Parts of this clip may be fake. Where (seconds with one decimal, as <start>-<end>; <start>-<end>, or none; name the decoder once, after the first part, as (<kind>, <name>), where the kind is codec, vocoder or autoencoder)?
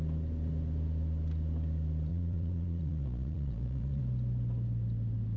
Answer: 2.1-4.0 (vocoder, Vocos)